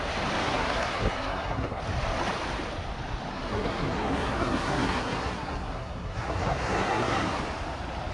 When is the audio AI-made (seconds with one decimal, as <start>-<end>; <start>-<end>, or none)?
0.4-1.8; 3.3-7.4